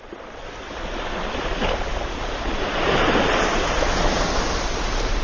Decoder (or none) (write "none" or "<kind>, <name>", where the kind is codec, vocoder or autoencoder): none